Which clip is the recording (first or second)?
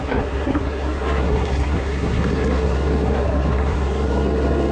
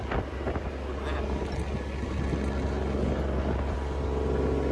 second